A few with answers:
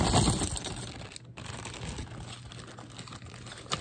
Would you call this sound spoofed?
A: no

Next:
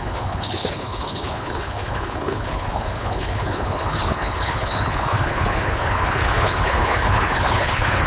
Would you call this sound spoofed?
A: yes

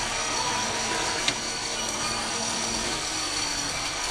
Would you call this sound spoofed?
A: yes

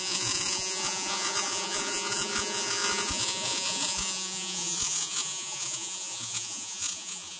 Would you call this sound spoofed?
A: yes